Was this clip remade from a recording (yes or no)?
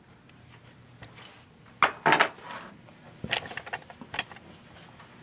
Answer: no